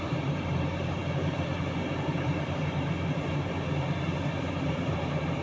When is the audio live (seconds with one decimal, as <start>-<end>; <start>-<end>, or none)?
1.0-4.2